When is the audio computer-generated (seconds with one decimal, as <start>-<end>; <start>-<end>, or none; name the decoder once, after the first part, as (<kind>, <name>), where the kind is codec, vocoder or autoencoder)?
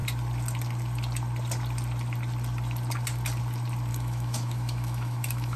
3.9-5.6 (autoencoder, DAC-VAE)